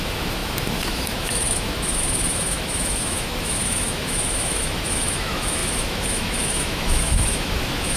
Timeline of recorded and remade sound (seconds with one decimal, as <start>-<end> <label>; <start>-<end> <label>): 0.0-8.0 remade